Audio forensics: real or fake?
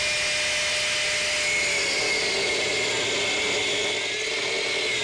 real